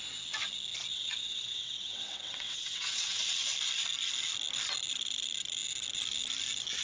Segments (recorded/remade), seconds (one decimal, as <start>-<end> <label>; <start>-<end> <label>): 0.0-0.9 recorded; 0.9-3.2 remade; 3.2-6.8 recorded